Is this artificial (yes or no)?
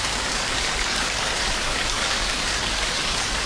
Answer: yes